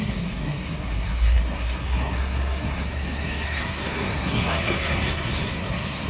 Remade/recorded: remade